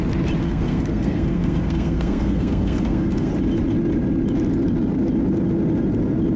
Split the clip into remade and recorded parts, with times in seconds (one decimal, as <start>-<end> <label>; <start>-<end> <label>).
0.0-0.4 recorded; 0.4-3.3 remade; 3.3-6.4 recorded